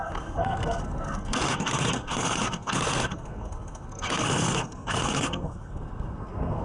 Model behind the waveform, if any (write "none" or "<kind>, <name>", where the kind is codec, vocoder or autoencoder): codec, SNAC